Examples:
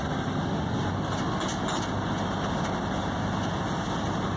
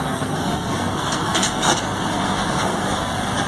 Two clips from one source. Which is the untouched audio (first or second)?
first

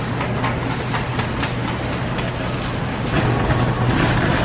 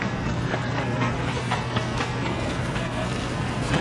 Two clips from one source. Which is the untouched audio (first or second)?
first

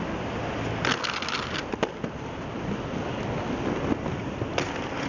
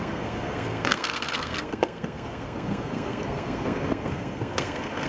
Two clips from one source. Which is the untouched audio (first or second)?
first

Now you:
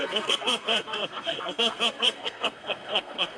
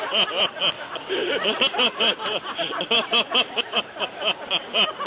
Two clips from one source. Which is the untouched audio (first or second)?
second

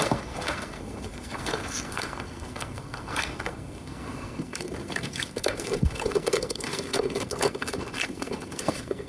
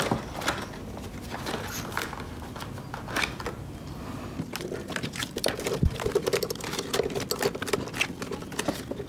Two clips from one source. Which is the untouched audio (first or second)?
second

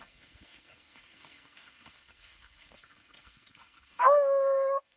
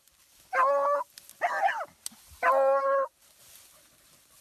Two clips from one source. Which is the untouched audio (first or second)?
second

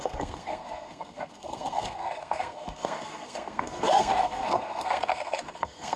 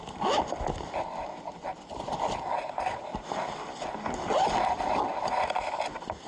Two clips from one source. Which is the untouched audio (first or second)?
second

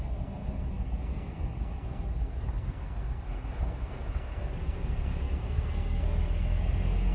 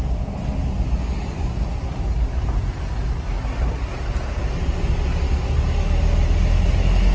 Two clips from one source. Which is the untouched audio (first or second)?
second